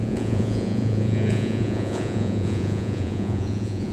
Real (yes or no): no